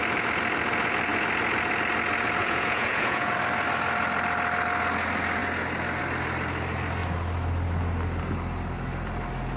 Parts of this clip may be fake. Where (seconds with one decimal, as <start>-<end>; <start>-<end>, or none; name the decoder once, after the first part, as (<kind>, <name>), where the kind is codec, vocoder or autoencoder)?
2.4-3.3 (vocoder, Vocos)